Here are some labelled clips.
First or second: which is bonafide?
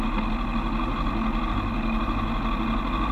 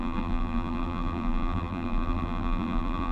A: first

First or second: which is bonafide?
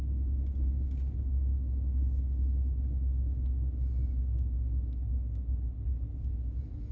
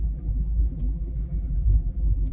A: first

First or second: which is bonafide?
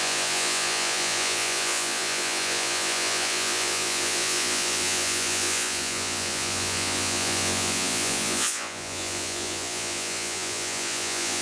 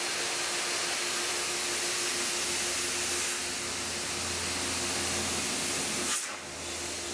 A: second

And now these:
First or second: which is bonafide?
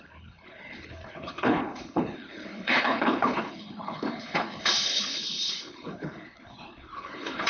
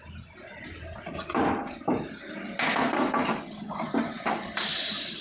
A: second